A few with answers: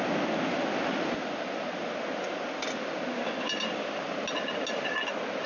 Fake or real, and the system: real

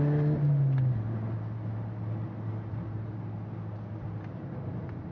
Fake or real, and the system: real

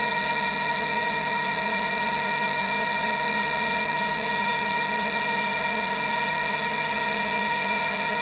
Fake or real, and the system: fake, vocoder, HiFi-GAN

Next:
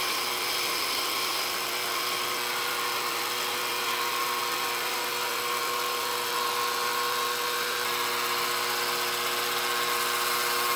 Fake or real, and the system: real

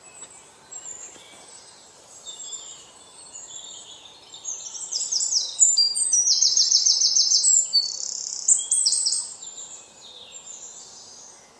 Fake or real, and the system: fake, vocoder, BigVGAN v2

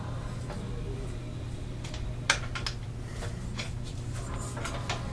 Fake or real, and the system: real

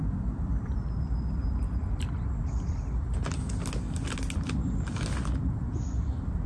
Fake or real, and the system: real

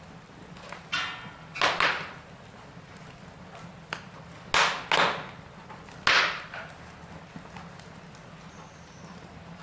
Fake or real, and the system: real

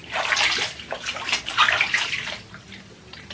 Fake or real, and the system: real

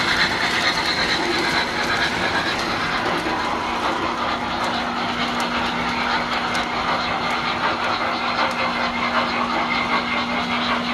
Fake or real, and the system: real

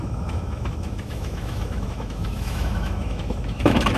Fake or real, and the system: fake, autoencoder, DAC-VAE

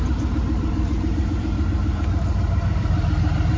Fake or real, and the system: fake, vocoder, BigVGAN v2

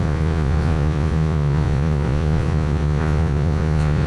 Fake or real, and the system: fake, vocoder, Vocos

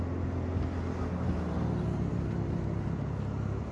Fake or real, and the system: real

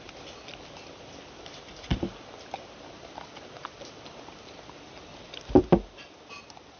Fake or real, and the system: real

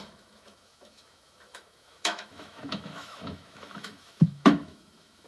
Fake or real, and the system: fake, autoencoder, DAC-VAE